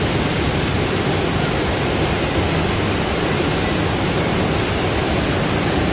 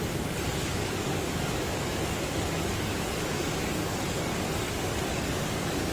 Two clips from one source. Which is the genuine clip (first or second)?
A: first